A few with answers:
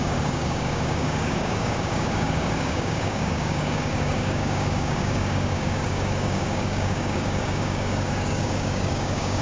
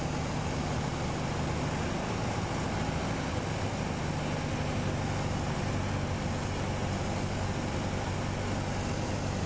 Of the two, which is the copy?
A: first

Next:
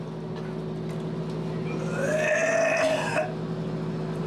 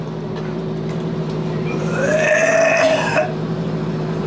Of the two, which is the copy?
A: second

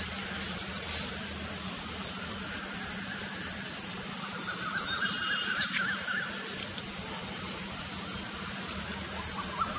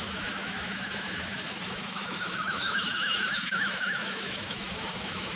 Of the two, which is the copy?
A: second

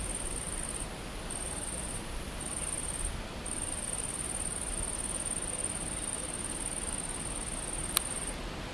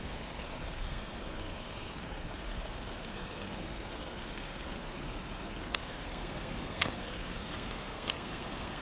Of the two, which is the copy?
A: second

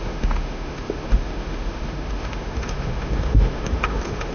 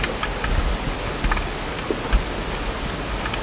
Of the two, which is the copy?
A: first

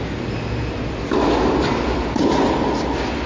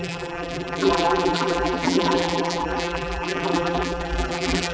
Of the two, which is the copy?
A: second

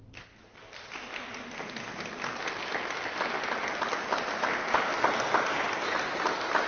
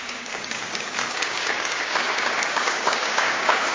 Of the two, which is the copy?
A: second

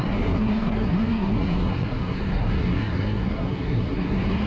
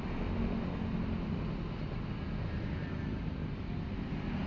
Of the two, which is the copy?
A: first